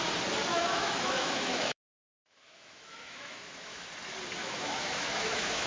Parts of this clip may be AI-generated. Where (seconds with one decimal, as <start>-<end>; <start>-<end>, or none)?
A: 0.5-3.9; 4.4-5.7